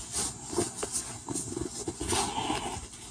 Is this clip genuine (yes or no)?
yes